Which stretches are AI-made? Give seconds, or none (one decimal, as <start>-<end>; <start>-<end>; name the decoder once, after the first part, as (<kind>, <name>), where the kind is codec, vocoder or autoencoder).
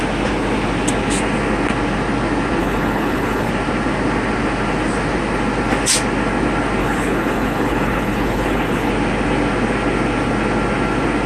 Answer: 2.6-3.5 (codec, HILCodec); 6.8-8.9